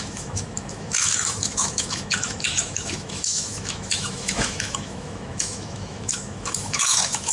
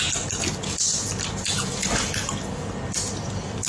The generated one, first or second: first